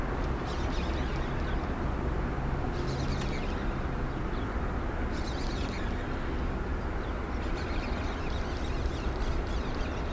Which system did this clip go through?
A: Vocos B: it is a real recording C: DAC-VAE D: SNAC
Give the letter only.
B